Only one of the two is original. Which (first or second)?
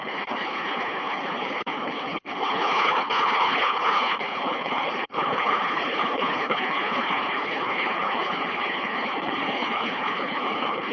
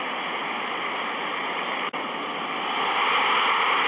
second